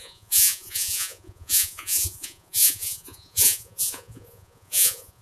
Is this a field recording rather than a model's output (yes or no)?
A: no